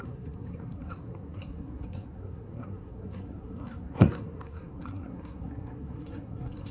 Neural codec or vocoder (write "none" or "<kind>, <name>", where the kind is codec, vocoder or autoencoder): codec, SNAC